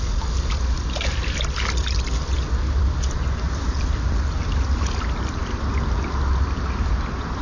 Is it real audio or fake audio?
real